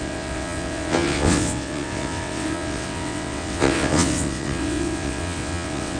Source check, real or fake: fake